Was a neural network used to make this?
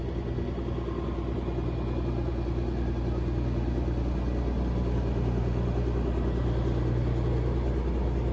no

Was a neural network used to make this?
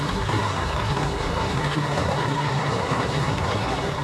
yes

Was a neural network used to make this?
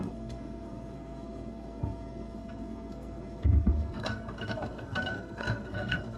yes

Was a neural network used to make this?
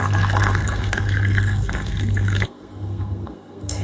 yes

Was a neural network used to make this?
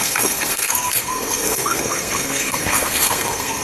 yes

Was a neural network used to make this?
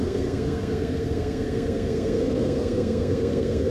yes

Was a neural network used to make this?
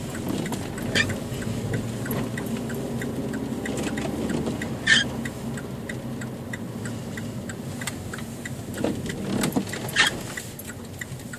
no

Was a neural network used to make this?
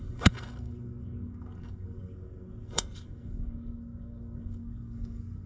yes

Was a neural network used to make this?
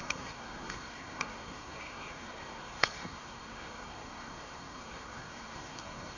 yes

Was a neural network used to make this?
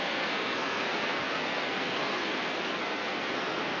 yes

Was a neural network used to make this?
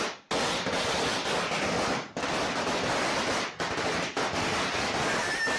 no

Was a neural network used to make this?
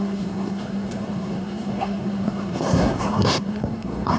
yes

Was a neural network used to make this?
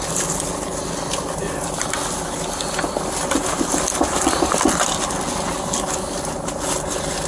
no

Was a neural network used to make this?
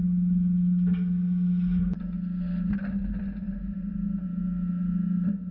no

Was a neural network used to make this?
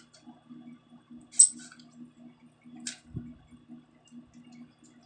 no